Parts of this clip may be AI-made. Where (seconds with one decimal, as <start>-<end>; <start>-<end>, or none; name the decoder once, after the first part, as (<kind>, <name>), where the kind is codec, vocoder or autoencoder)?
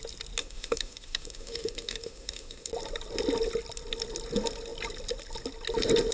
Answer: 0.4-2.7 (autoencoder, DAC-VAE)